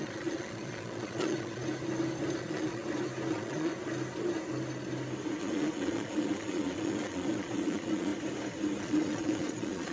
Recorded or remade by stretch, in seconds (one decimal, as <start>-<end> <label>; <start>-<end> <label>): 0.0-1.6 remade; 1.6-2.4 recorded; 2.4-2.8 remade; 2.8-3.3 recorded; 3.3-3.7 remade; 3.7-5.4 recorded; 5.4-8.1 remade; 8.1-8.8 recorded; 8.8-9.9 remade